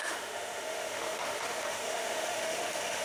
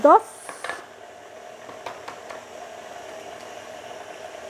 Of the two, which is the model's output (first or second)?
first